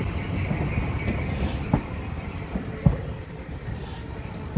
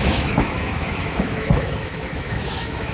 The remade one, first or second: second